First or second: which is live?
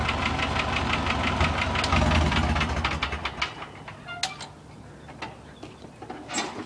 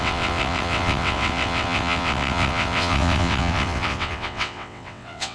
first